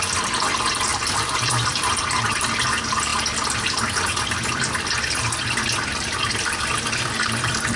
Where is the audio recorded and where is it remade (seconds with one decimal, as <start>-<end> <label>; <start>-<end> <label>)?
0.0-7.8 remade